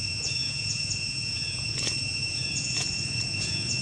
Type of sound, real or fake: fake